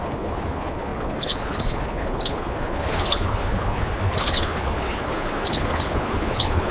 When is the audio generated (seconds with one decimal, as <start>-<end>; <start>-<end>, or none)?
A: 0.0-6.7